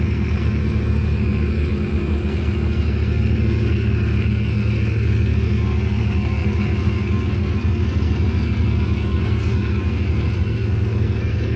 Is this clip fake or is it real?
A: fake